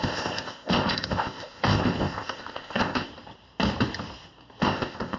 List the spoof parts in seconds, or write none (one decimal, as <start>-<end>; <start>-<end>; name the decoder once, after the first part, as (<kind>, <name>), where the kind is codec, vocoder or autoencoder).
0.0-3.1 (codec, ZipCodec); 4.6-5.2

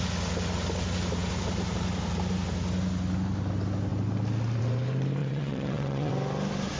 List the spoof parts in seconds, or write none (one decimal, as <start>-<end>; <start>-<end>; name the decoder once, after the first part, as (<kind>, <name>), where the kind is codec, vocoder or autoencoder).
5.2-6.1 (vocoder, WaveNeXt)

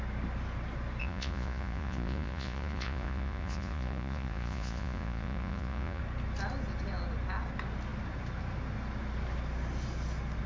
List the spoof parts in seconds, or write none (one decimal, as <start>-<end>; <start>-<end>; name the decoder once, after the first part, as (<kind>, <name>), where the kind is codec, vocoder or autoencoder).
1.0-6.0 (vocoder, Vocos)